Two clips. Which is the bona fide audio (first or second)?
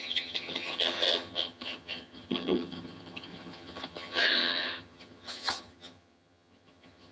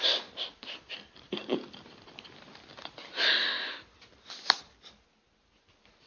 second